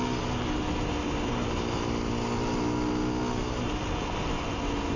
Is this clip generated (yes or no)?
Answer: no